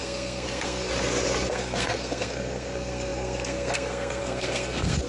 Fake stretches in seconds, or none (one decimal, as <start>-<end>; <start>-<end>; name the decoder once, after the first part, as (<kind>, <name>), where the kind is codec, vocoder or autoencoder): 0.0-0.9 (codec, SNAC); 1.5-5.1